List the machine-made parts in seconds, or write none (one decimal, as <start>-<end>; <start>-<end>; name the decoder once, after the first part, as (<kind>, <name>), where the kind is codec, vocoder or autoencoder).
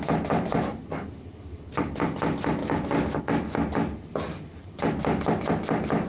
2.6-3.2 (codec, DAC)